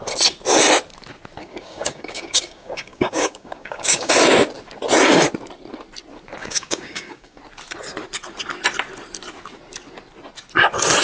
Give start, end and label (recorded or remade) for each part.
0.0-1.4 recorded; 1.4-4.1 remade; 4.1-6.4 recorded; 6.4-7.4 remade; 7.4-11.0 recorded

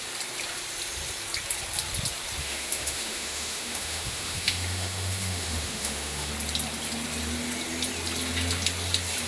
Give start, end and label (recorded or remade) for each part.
0.0-2.4 recorded; 2.4-6.3 remade; 6.3-9.3 recorded

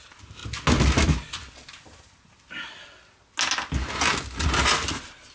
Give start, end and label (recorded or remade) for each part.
0.0-5.3 recorded

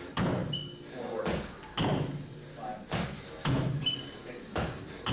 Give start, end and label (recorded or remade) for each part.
0.0-0.4 remade; 0.4-1.7 recorded; 1.7-5.1 remade